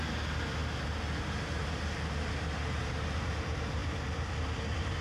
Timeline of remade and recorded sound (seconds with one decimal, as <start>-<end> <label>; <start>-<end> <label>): 0.0-5.0 recorded